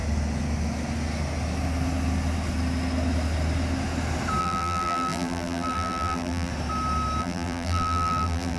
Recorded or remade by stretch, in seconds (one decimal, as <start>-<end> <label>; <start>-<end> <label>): 0.0-4.4 recorded; 4.4-6.5 remade; 6.5-7.2 recorded; 7.2-8.6 remade

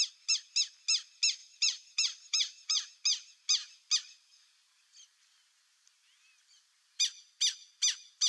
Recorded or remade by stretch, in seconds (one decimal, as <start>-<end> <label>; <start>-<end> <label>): 0.0-1.4 recorded; 1.4-2.9 remade; 2.9-8.3 recorded

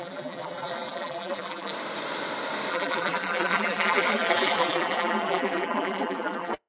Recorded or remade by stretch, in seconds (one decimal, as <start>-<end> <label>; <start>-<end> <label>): 0.0-1.7 remade; 1.7-2.7 recorded; 2.7-6.7 remade

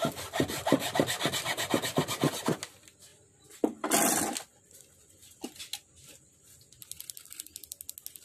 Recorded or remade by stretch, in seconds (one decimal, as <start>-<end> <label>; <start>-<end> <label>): 0.0-8.2 recorded

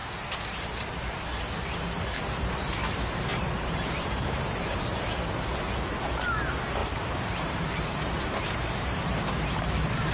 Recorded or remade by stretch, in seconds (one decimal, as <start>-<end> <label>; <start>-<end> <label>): 0.0-0.9 remade; 0.9-3.3 recorded; 3.3-5.0 remade; 5.0-6.8 recorded; 6.8-10.1 remade

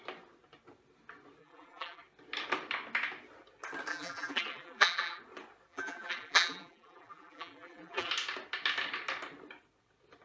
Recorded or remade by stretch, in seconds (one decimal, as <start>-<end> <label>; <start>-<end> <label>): 0.0-1.4 recorded; 1.4-2.0 remade; 2.0-3.9 recorded; 3.9-5.2 remade; 5.2-5.7 recorded; 5.7-8.1 remade; 8.1-10.2 recorded

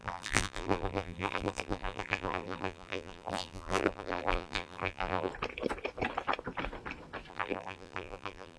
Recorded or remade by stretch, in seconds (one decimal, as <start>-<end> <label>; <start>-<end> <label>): 0.0-5.3 remade; 5.3-7.3 recorded; 7.3-8.6 remade

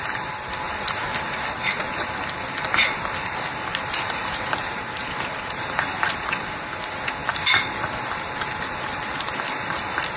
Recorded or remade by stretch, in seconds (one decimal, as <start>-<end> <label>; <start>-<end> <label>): 0.0-4.2 recorded; 4.2-6.1 remade; 6.1-10.2 recorded